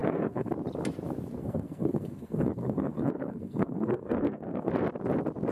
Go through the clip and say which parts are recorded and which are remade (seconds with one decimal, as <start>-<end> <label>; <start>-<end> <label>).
0.0-0.5 remade; 0.5-1.4 recorded; 1.4-4.7 remade; 4.7-5.5 recorded